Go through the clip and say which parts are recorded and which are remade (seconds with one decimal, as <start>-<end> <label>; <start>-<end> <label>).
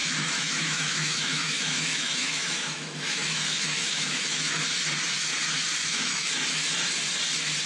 0.0-4.6 remade; 4.6-5.8 recorded; 5.8-6.3 remade; 6.3-7.7 recorded